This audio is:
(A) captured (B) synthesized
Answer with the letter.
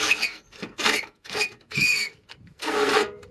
B